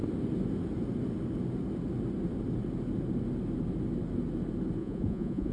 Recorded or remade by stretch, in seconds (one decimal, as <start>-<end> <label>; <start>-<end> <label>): 0.0-4.8 recorded; 4.8-5.5 remade